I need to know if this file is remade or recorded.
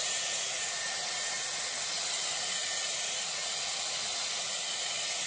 remade